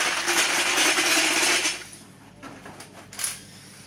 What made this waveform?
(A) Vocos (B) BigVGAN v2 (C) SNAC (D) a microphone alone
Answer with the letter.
D